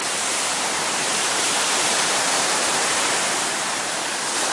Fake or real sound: fake